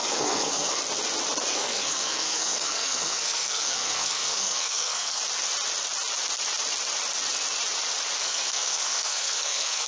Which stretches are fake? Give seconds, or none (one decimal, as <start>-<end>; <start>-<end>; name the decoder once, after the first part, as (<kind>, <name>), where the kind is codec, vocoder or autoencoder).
0.0-0.8 (codec, SNAC); 1.5-5.2; 8.2-9.9

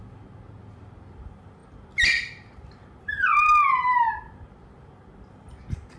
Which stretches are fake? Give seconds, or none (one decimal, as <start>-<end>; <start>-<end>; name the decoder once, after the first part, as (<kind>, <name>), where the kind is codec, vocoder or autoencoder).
none

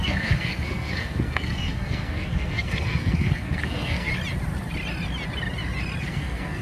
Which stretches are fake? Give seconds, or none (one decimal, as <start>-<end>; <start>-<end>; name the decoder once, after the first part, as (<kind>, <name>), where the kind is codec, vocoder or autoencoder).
0.0-4.1 (codec, SNAC); 6.0-6.6

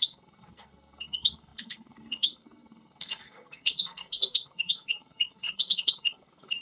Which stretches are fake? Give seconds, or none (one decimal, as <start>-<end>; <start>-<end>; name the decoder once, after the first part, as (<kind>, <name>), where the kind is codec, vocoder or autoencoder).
0.0-6.6 (codec, SNAC)

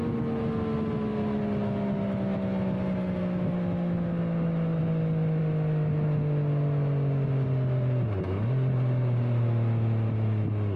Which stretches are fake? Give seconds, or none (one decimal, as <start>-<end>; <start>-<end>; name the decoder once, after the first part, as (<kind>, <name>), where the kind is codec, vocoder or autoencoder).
none

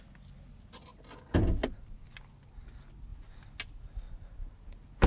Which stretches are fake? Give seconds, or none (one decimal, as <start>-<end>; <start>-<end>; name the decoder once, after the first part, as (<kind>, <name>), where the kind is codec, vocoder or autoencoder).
none